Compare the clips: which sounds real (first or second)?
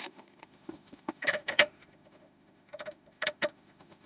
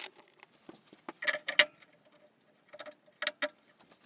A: second